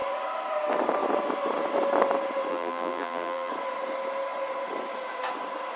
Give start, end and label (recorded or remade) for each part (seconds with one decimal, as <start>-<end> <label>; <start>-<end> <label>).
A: 0.0-2.5 recorded; 2.5-3.5 remade; 3.5-5.8 recorded